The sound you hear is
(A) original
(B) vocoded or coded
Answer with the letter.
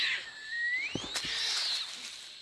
A